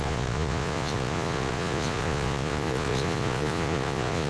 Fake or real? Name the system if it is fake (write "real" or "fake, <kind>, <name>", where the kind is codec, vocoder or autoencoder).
fake, vocoder, Vocos